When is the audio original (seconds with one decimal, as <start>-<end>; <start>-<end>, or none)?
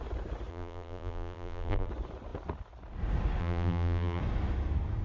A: 0.0-0.5; 1.9-3.4; 4.2-5.0